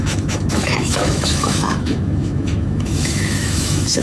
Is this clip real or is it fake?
fake